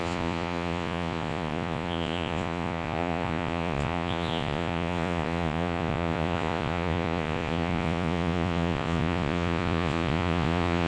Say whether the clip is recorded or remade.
remade